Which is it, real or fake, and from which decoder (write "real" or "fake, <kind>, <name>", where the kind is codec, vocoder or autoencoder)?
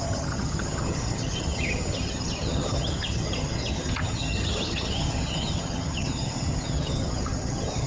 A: fake, vocoder, HiFi-GAN